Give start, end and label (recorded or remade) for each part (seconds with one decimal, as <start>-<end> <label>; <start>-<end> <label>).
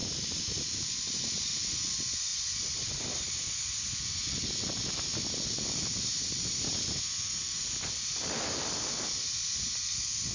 0.0-0.9 remade; 0.9-10.3 recorded